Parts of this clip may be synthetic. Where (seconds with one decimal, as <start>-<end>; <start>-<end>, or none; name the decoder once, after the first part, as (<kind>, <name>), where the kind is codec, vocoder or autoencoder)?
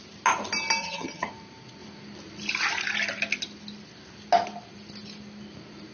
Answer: 0.8-1.3 (vocoder, HiFi-GAN)